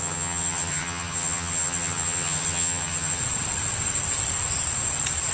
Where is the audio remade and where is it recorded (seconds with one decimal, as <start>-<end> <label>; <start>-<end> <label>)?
0.0-3.2 remade; 3.2-5.3 recorded